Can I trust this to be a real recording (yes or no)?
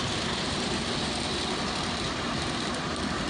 yes